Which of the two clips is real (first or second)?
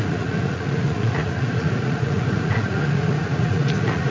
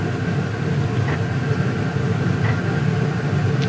second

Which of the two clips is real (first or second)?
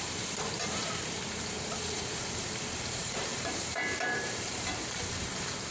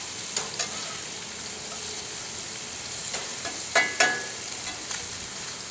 second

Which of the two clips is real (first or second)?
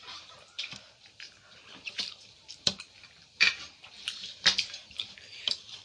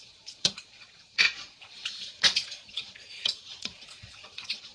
first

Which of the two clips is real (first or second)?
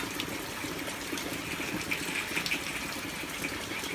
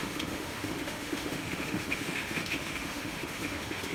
first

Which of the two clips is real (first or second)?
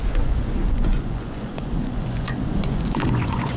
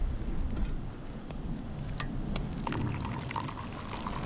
second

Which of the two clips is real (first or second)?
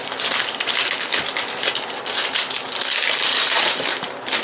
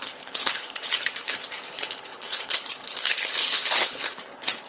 first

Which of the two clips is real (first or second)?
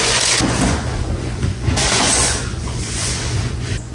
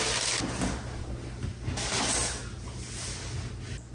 second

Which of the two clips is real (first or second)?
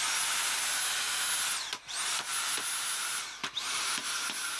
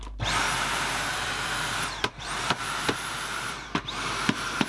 first